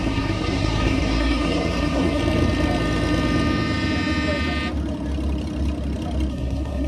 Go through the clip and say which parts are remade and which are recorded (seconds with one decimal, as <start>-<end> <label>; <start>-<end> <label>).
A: 0.0-2.2 remade; 2.2-6.3 recorded; 6.3-6.9 remade